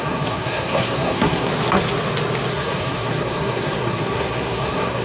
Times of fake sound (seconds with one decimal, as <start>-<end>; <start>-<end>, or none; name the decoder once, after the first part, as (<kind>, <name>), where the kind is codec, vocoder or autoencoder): 0.0-1.5 (codec, SNAC); 2.5-5.0